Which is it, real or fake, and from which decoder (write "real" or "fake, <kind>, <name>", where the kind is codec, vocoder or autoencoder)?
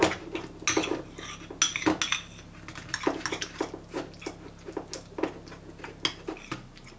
real